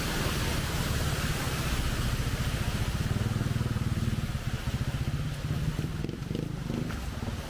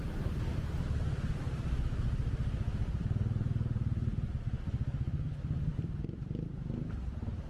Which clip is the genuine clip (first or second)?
first